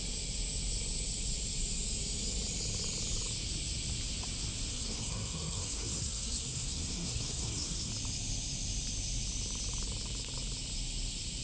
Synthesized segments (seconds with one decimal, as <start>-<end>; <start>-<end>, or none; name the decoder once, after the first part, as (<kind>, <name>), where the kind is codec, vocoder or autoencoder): 4.7-7.9 (codec, SNAC)